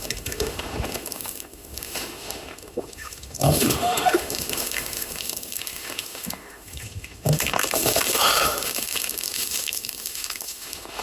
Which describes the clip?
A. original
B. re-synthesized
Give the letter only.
B